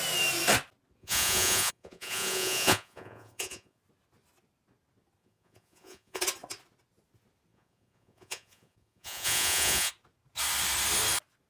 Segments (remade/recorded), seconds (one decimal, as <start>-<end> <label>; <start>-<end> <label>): 0.0-1.0 recorded; 1.0-3.8 remade; 3.8-5.2 recorded; 5.2-6.2 remade; 6.2-7.5 recorded; 7.5-9.9 remade; 9.9-11.5 recorded